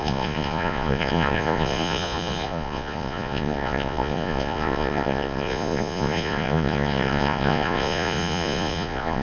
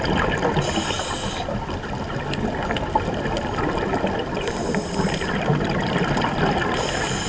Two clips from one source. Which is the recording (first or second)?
second